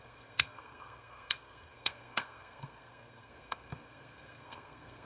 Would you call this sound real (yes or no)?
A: no